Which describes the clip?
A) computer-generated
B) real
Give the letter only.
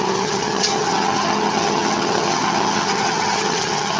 A